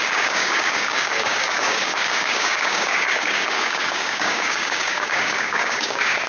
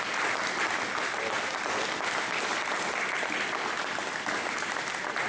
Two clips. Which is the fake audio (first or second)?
first